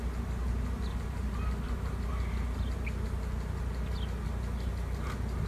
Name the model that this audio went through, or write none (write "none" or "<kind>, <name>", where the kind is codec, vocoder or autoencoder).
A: none